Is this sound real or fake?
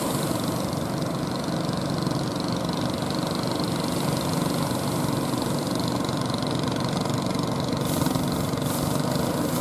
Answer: real